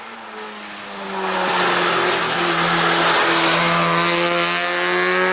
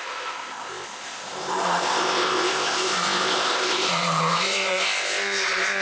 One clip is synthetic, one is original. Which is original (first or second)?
first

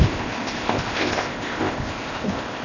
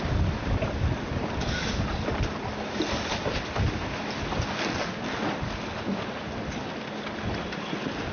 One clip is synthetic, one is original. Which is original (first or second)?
second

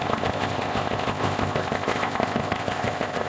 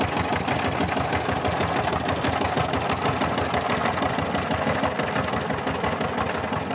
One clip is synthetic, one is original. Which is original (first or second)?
second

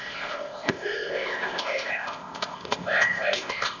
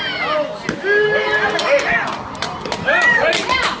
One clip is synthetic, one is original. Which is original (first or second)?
second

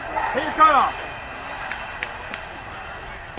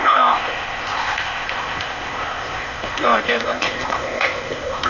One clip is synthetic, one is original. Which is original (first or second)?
first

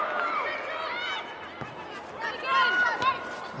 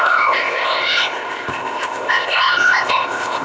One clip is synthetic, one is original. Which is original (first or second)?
first